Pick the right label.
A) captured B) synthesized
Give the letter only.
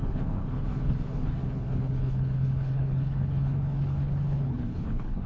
B